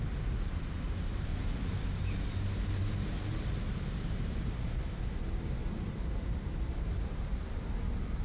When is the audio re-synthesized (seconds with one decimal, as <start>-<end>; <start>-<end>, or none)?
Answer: 1.3-1.8; 2.8-7.0